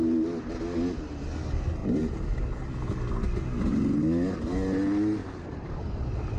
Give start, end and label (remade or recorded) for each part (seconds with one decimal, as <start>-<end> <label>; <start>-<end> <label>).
0.0-5.2 recorded; 5.2-5.7 remade; 5.7-6.4 recorded